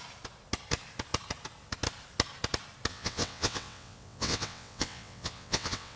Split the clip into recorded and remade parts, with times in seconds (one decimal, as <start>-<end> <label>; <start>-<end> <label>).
0.0-2.9 recorded; 2.9-6.0 remade